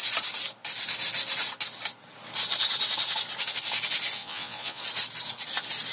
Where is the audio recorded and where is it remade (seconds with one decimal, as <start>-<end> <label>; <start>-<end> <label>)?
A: 0.0-4.2 recorded; 4.2-4.8 remade; 4.8-5.9 recorded